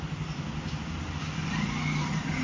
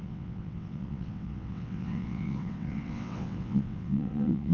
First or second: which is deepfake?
second